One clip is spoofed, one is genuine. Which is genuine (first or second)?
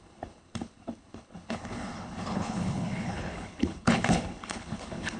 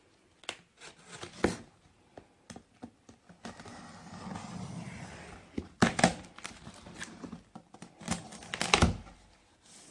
second